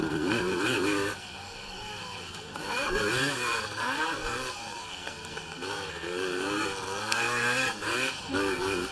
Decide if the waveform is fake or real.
fake